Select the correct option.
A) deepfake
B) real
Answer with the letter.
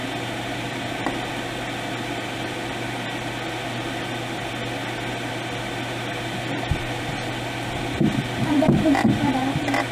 B